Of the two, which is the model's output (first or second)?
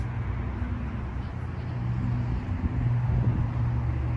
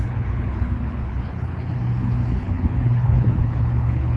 second